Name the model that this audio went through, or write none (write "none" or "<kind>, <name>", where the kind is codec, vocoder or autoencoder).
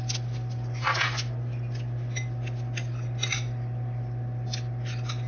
none